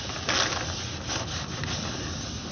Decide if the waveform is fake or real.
real